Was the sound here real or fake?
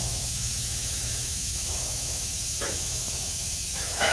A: fake